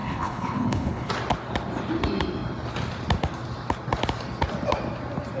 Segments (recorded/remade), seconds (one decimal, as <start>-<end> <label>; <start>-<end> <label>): 0.0-1.1 remade; 1.1-5.4 recorded